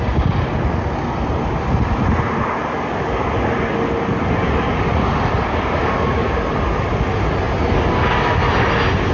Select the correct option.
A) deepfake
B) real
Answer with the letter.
B